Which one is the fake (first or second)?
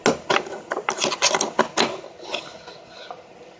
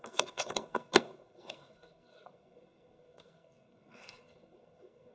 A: second